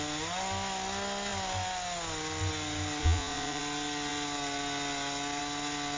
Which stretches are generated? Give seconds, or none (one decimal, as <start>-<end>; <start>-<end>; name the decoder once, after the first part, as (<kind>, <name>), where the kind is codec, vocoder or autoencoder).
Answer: 3.0-3.6 (vocoder, Vocos)